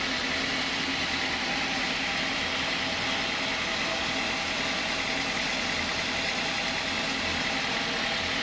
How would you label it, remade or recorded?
recorded